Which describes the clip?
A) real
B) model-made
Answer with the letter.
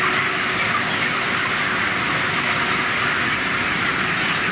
A